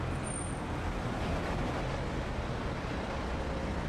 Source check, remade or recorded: recorded